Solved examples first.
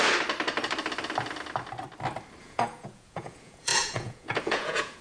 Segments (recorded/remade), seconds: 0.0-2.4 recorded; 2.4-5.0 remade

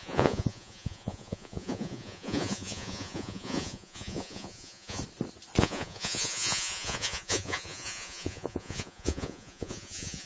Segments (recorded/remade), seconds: 0.0-5.0 remade; 5.0-5.6 recorded; 5.6-10.3 remade

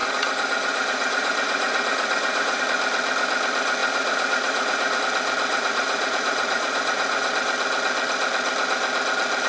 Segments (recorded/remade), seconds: 0.0-2.6 remade; 2.6-3.8 recorded; 3.8-5.0 remade; 5.0-5.5 recorded; 5.5-7.3 remade; 7.3-9.5 recorded

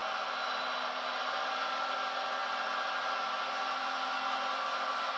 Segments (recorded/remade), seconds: 0.0-5.2 recorded

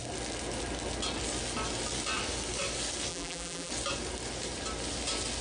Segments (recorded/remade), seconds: 0.0-3.1 recorded; 3.1-3.7 remade; 3.7-5.4 recorded